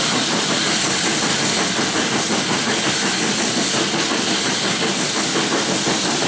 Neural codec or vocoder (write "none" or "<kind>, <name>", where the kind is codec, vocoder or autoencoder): none